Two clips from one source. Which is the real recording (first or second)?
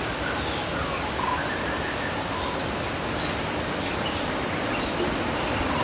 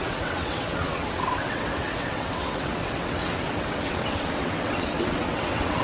first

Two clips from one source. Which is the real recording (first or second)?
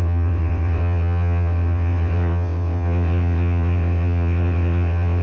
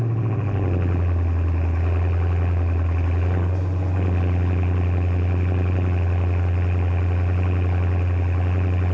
second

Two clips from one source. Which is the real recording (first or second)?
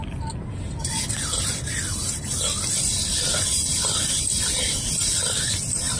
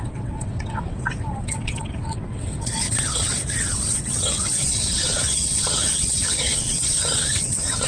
first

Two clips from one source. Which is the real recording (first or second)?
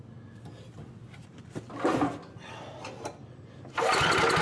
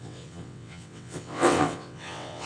first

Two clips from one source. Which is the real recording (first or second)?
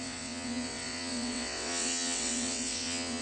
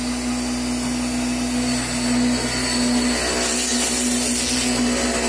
second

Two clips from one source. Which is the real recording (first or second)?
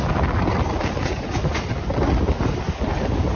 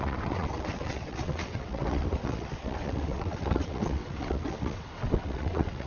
first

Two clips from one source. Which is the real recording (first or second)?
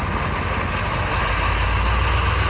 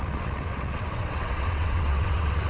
first